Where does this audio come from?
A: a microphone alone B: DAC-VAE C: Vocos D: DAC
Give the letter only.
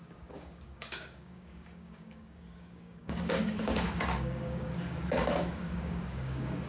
D